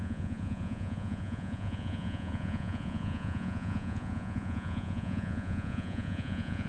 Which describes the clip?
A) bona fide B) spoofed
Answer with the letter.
B